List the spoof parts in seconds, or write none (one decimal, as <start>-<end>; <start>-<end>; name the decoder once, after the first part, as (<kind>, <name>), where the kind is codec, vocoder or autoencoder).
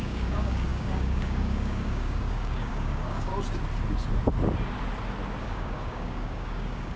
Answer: 0.0-3.3 (codec, DAC); 5.4-7.0